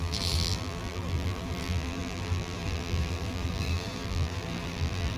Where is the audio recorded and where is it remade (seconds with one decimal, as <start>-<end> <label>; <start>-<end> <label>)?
0.0-5.2 remade